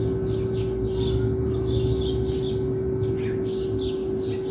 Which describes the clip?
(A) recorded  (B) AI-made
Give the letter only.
A